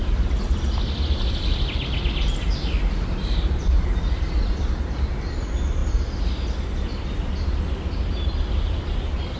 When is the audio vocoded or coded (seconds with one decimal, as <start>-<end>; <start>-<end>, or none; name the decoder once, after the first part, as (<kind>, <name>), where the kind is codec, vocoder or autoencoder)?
none